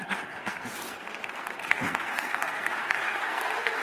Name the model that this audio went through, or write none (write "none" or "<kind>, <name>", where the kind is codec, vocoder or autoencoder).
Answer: codec, SNAC